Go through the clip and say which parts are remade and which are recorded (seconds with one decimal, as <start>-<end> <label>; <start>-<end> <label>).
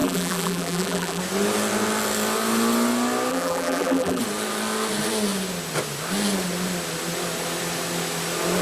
0.0-1.2 remade; 1.2-3.3 recorded; 3.3-4.2 remade; 4.2-8.6 recorded